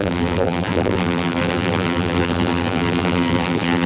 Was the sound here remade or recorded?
remade